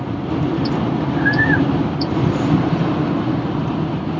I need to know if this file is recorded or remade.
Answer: remade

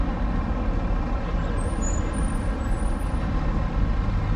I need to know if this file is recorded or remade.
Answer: recorded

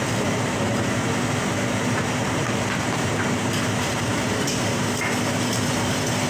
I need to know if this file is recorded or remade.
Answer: remade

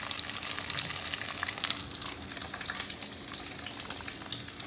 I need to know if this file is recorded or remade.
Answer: recorded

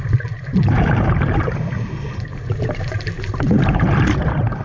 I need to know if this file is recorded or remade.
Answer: remade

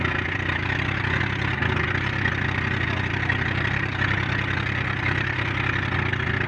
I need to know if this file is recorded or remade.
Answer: recorded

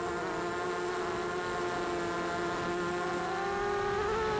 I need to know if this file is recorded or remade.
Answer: recorded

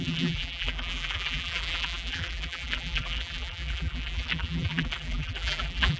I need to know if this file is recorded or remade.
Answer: remade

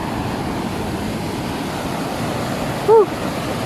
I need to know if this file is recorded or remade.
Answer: recorded